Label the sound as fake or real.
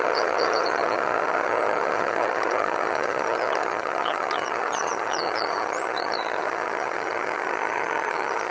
fake